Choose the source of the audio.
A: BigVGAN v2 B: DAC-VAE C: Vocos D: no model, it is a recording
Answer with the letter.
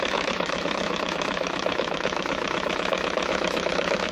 B